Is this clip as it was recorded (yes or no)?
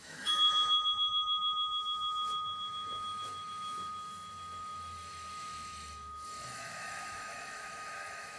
no